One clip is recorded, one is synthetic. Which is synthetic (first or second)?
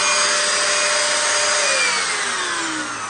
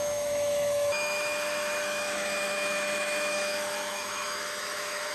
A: second